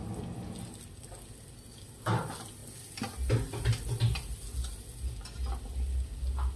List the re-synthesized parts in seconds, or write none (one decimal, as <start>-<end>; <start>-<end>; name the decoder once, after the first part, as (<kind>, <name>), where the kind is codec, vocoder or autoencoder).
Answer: none